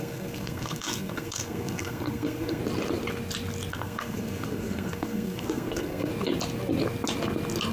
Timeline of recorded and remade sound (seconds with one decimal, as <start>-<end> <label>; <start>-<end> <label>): 0.0-2.6 remade; 2.6-3.7 recorded; 3.7-6.1 remade; 6.1-7.7 recorded